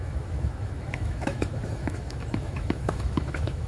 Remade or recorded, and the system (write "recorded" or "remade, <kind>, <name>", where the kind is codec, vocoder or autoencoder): remade, autoencoder, DAC-VAE